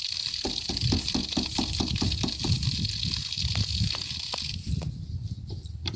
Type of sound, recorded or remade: recorded